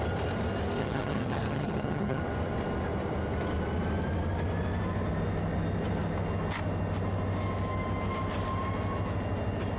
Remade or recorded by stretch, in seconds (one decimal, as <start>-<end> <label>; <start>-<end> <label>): 0.0-0.8 recorded; 0.8-2.2 remade; 2.2-9.8 recorded